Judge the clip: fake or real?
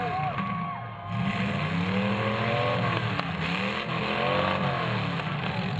real